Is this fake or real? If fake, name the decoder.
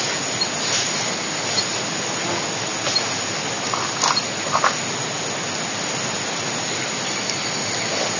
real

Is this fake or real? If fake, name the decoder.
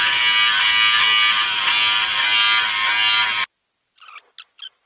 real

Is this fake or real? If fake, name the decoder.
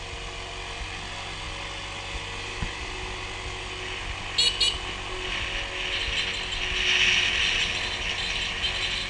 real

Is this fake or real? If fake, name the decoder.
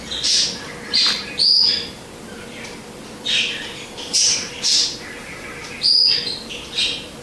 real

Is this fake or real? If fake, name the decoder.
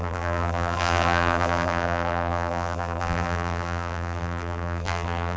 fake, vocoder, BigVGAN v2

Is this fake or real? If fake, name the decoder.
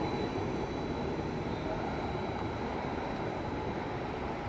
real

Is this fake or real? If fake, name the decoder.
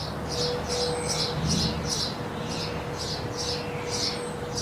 real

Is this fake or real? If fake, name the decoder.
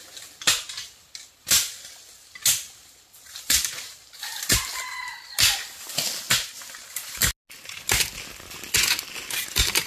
real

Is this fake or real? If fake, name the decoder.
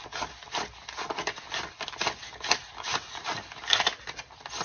real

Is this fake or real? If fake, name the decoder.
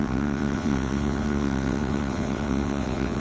fake, vocoder, WaveNeXt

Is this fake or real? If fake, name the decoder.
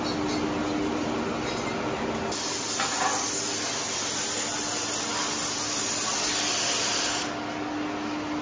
real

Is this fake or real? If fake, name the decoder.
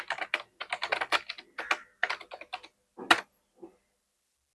real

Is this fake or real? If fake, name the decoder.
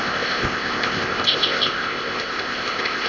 fake, codec, ZipCodec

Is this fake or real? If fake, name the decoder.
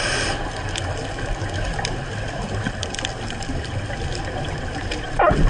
real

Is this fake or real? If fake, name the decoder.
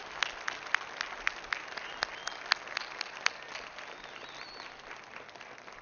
real